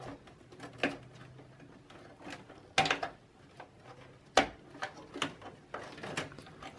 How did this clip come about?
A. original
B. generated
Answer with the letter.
A